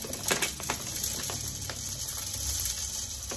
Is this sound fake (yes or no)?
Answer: no